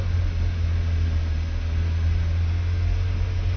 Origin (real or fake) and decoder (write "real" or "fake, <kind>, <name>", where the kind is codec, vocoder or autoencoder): real